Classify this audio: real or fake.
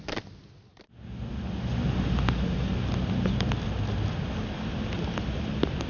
real